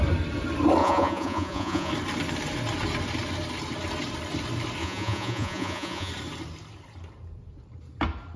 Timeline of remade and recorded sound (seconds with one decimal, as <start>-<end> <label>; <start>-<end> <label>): 0.0-0.8 recorded; 0.8-1.9 remade; 1.9-4.8 recorded; 4.8-6.1 remade; 6.1-8.4 recorded